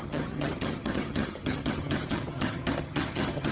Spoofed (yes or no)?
yes